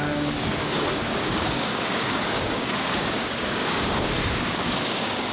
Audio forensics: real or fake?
fake